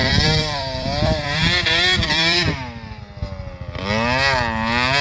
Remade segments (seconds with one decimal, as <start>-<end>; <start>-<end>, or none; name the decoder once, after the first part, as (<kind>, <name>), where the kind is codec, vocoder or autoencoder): 0.0-3.0 (vocoder, BigVGAN v2)